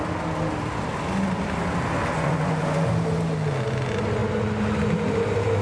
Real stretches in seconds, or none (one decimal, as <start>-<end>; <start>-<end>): 0.0-2.0; 2.9-5.6